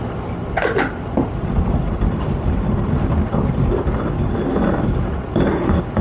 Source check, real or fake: real